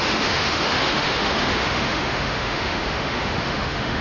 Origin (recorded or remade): remade